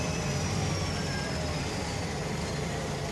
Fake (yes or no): no